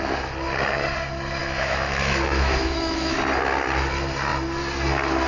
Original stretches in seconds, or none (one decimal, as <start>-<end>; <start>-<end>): 0.0-1.4; 3.2-5.3